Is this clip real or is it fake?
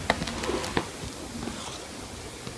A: real